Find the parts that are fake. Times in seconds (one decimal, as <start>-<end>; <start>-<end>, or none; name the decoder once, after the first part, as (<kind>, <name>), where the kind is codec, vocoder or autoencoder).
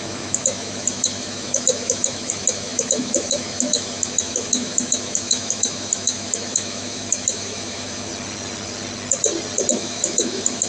0.0-8.1 (autoencoder, DAC-VAE); 9.7-10.7